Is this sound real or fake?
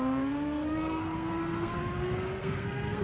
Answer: fake